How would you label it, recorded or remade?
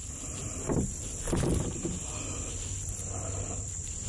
recorded